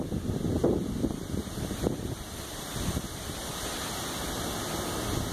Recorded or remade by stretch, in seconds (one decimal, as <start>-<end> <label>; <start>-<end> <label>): 0.0-0.6 recorded; 0.6-2.7 remade; 2.7-5.3 recorded